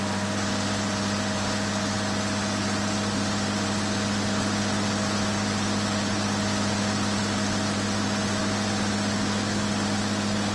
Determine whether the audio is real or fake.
real